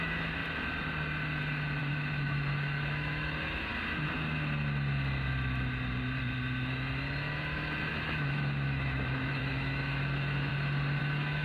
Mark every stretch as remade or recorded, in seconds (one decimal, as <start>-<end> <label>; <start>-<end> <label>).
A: 0.0-0.4 remade; 0.4-1.8 recorded; 1.8-3.7 remade; 3.7-7.9 recorded; 7.9-10.5 remade; 10.5-11.0 recorded; 11.0-11.4 remade